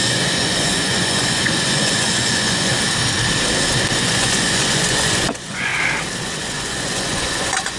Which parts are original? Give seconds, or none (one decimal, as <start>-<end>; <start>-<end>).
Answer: 2.7-4.0; 5.7-6.2